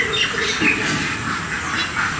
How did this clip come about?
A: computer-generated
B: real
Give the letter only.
B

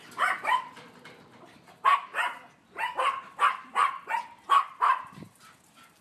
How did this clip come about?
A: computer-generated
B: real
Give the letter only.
B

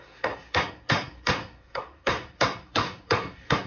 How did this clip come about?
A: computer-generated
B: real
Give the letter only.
A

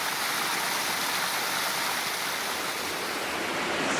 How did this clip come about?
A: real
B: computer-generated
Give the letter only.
A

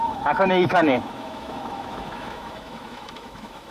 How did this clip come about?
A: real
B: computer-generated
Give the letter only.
B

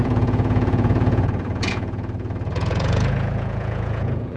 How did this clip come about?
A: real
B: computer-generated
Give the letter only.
B